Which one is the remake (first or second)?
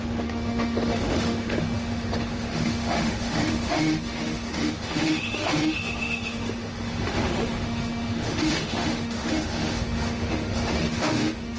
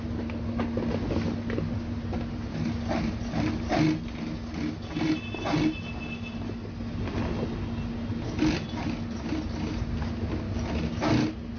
first